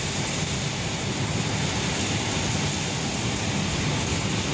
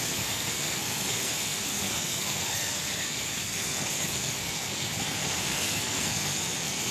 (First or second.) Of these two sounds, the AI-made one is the second